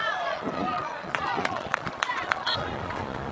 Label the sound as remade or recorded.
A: remade